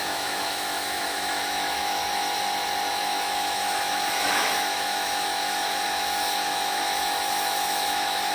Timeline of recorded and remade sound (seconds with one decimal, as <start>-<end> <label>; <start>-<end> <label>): 0.0-2.0 remade; 2.0-2.9 recorded; 2.9-8.3 remade